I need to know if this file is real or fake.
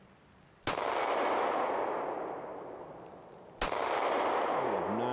real